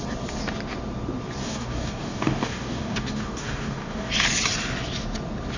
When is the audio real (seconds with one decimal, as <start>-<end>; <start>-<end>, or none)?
0.0-1.4; 4.1-5.6